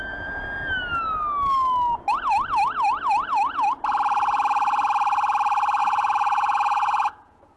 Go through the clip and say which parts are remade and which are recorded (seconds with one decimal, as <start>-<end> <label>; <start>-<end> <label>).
0.0-5.8 recorded; 5.8-7.6 remade